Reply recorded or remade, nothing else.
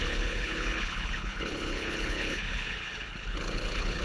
remade